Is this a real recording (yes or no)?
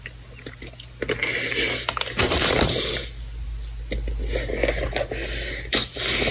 yes